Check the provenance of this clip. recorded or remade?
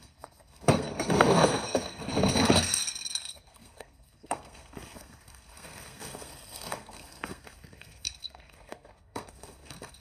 remade